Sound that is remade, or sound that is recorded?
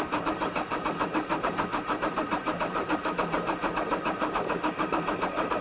remade